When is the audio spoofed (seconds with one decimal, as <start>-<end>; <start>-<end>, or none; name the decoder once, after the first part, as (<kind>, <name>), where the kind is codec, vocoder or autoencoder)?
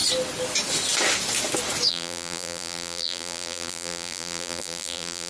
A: 1.9-5.3 (vocoder, BigVGAN v2)